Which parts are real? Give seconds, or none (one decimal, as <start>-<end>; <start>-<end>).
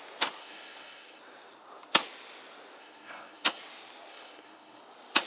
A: 0.0-0.4; 1.2-2.8; 3.6-4.1; 4.8-5.3